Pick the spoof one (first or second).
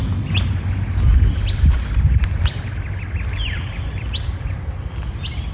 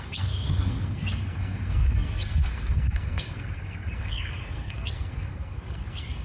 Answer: second